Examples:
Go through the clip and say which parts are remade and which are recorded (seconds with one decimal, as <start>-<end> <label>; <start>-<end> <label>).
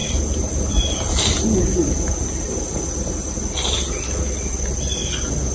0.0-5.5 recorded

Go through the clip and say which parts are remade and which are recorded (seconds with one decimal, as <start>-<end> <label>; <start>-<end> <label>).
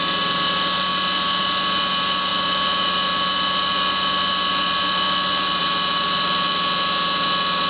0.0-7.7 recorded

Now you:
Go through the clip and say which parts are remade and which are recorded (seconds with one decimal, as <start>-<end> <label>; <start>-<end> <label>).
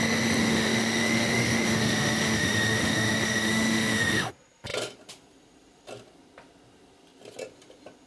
0.0-0.4 recorded; 0.4-4.3 remade; 4.3-8.1 recorded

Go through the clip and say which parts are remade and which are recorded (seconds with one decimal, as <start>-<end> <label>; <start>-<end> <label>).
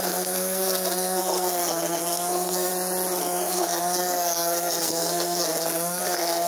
0.0-2.7 remade; 2.7-3.2 recorded; 3.2-6.5 remade